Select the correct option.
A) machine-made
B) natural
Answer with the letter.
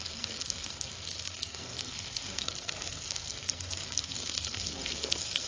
A